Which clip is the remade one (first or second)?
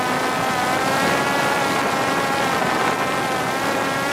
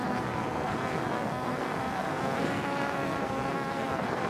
second